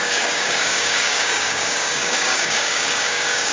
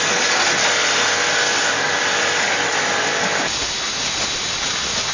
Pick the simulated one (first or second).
first